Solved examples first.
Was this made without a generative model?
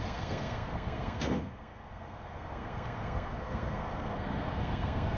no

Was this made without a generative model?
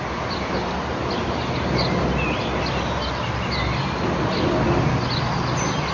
yes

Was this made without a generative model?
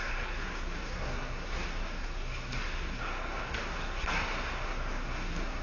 no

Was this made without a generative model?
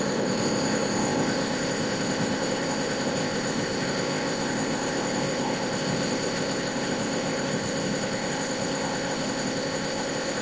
no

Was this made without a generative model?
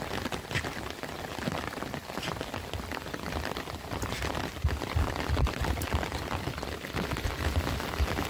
yes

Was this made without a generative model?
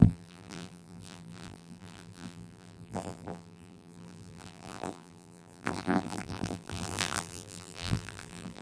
no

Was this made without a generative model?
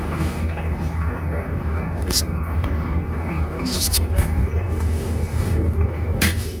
no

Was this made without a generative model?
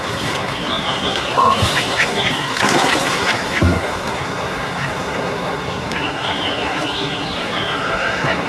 no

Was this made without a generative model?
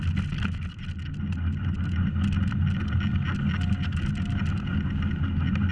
yes